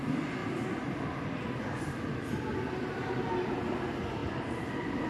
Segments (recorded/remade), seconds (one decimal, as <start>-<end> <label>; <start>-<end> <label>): 0.0-5.1 recorded